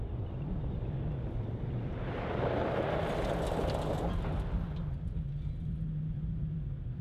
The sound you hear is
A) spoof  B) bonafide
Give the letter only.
B